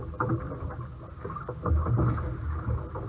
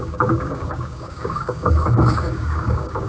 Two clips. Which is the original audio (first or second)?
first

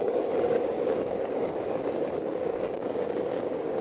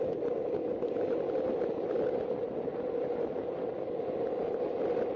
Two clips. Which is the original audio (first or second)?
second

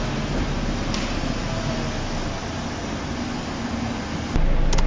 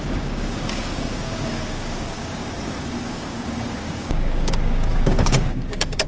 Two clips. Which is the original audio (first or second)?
first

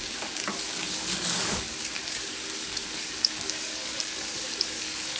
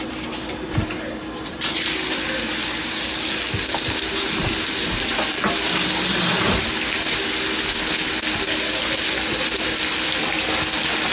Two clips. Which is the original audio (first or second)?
second